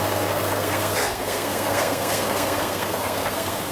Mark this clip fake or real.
fake